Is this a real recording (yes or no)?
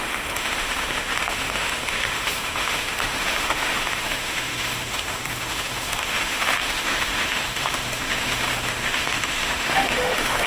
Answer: no